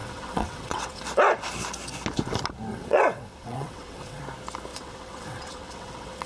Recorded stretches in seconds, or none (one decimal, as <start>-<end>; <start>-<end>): 1.0-2.7; 4.2-4.7